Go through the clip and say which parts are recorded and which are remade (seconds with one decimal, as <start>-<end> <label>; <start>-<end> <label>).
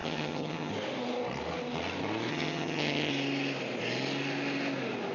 0.0-0.7 remade; 0.7-2.3 recorded; 2.3-3.1 remade; 3.1-5.1 recorded